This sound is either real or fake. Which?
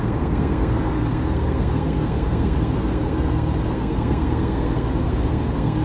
fake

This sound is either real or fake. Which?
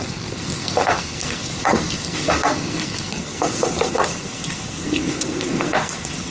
fake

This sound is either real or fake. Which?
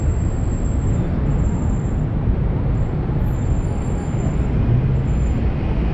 real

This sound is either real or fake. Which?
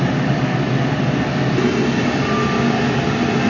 real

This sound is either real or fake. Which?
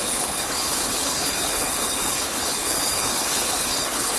fake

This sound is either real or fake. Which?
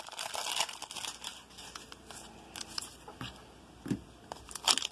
real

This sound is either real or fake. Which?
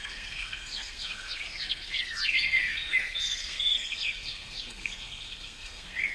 fake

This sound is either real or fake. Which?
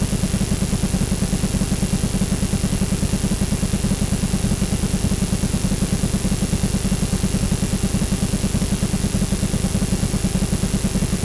real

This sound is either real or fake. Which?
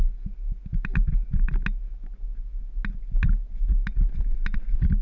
real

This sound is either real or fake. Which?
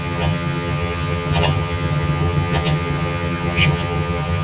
fake